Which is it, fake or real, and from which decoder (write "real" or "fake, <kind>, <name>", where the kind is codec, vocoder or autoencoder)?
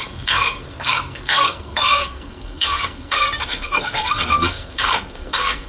fake, codec, SNAC